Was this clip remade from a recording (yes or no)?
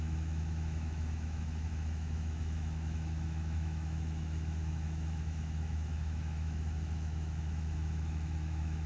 yes